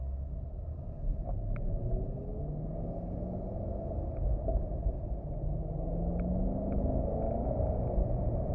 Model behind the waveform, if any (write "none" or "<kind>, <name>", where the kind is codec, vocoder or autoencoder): none